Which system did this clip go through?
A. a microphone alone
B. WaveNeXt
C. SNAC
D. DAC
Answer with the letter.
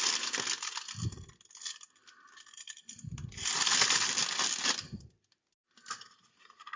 A